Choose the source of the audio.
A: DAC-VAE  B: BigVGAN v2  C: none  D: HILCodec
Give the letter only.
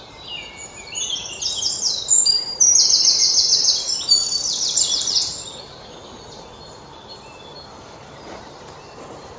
B